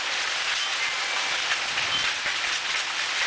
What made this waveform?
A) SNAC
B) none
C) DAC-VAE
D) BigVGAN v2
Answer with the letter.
B